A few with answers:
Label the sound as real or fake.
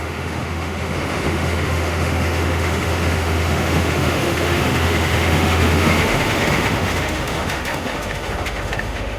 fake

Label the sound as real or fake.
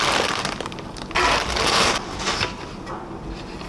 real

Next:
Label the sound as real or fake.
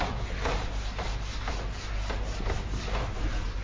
real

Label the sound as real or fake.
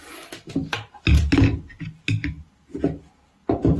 real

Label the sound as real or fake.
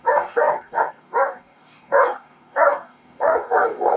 fake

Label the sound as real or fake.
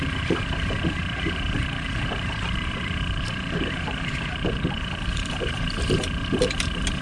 fake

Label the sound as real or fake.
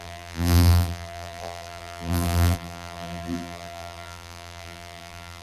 fake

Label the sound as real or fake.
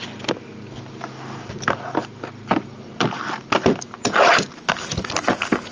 real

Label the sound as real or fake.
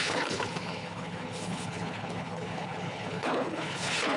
fake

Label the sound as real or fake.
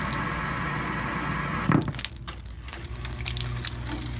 real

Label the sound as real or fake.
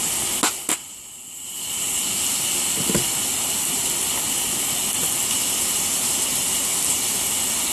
real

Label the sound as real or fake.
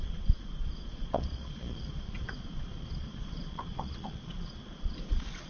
fake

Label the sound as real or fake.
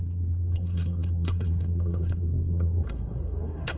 fake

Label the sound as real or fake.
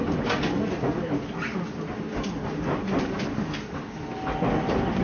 real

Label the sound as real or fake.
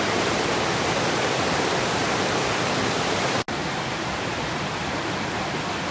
real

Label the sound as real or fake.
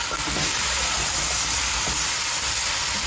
real